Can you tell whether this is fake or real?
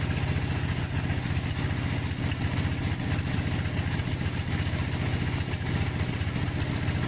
real